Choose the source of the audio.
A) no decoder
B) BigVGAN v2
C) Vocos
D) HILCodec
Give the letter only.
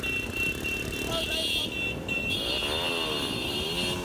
A